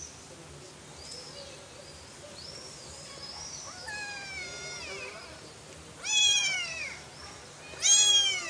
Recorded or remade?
recorded